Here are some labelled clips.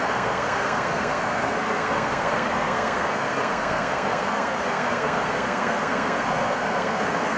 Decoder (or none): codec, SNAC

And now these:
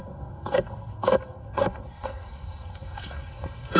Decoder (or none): codec, SNAC